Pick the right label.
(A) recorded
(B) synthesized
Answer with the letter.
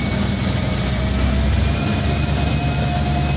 A